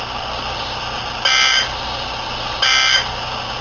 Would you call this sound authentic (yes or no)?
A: yes